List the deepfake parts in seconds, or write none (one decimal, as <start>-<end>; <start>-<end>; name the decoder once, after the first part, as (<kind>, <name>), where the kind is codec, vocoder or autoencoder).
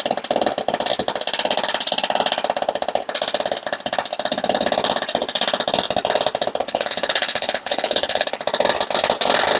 6.6-8.4 (codec, HILCodec)